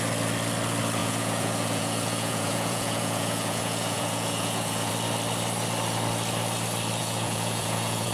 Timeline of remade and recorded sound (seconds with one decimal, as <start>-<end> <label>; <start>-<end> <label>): 0.0-1.0 recorded; 1.0-4.9 remade; 4.9-7.0 recorded; 7.0-8.1 remade